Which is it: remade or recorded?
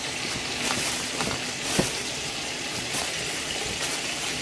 remade